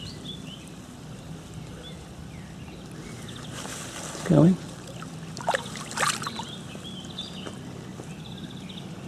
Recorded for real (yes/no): yes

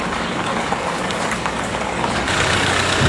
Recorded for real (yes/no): no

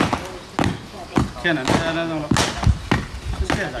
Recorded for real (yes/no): yes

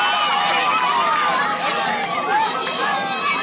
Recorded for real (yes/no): yes